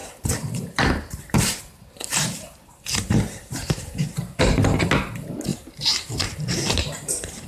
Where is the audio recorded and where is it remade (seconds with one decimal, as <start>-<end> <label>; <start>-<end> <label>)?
0.0-4.1 remade; 4.1-5.5 recorded; 5.5-7.5 remade